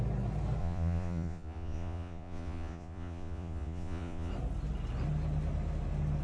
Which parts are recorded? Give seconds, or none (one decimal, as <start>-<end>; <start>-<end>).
0.0-0.6; 4.3-6.2